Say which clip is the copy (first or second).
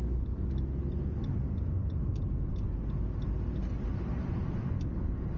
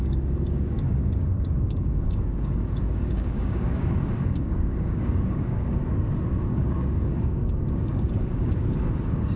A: second